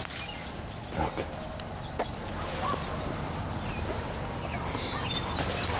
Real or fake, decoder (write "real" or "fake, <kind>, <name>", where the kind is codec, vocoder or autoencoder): real